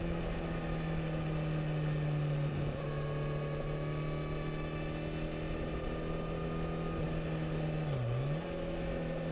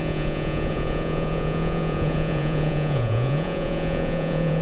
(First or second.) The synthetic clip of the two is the second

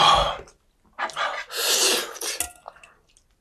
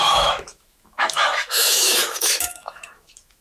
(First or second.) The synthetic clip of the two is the second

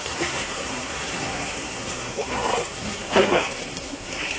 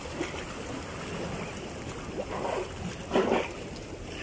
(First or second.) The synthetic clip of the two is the first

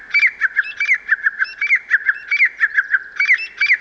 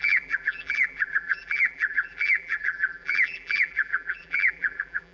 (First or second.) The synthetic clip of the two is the second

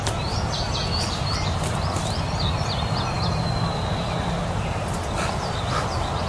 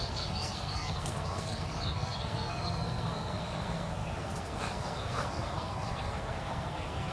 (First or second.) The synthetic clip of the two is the second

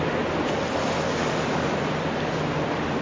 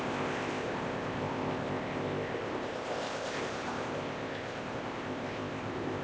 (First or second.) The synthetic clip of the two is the second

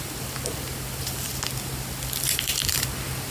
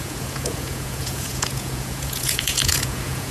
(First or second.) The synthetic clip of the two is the second